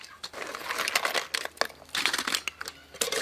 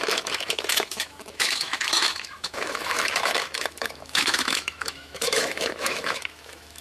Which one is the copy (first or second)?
second